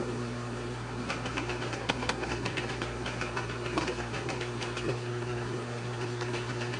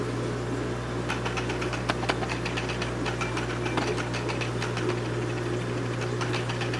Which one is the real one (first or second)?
second